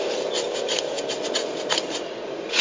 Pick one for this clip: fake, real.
fake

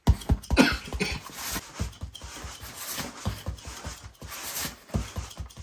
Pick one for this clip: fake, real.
real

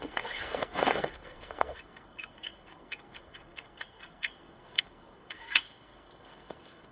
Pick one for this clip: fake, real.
fake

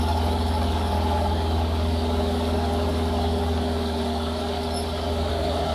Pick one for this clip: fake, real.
fake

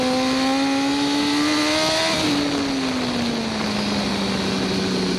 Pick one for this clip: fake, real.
real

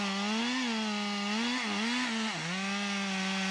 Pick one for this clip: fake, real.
real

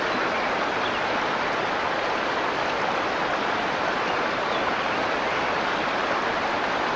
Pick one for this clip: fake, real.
real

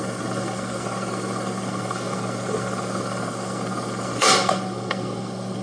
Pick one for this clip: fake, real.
fake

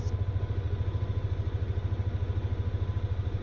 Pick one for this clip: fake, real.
real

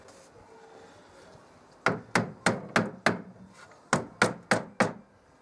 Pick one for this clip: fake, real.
real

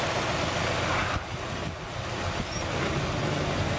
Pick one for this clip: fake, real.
real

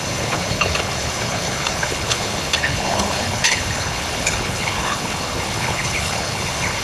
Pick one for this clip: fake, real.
fake